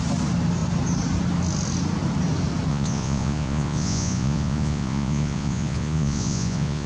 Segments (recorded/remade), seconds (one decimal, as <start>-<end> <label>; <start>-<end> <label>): 0.0-2.7 recorded; 2.7-6.9 remade